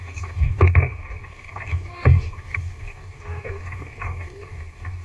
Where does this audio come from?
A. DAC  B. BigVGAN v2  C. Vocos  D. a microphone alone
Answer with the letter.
A